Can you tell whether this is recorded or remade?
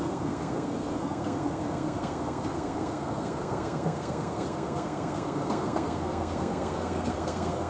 remade